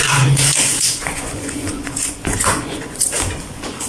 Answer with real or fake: fake